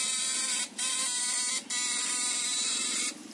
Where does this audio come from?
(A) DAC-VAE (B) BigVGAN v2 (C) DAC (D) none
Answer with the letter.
D